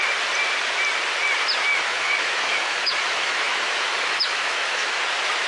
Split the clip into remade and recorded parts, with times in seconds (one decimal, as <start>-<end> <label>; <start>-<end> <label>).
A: 0.0-1.7 recorded; 1.7-5.0 remade; 5.0-5.5 recorded